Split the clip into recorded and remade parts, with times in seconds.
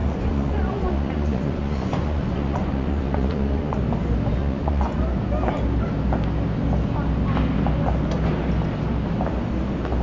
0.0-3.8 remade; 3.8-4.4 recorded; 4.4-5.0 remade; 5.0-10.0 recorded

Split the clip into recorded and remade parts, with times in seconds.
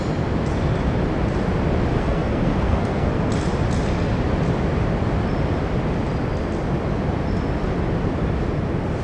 0.0-1.9 recorded; 1.9-3.3 remade; 3.3-9.0 recorded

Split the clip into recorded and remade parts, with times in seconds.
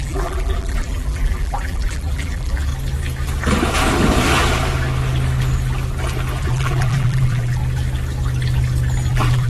0.0-2.7 remade; 2.7-6.4 recorded; 6.4-7.6 remade; 7.6-9.1 recorded; 9.1-9.5 remade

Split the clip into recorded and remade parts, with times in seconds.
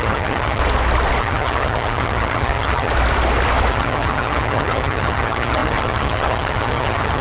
0.0-0.6 remade; 0.6-1.2 recorded; 1.2-2.9 remade; 2.9-3.7 recorded; 3.7-7.2 remade